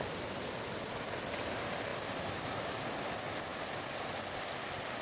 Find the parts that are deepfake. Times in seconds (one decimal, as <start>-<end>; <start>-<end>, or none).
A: none